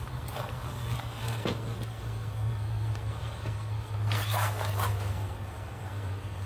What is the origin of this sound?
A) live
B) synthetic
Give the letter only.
B